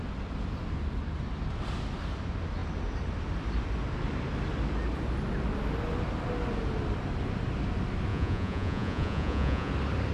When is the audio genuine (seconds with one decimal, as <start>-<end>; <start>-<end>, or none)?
0.0-8.1; 9.7-10.1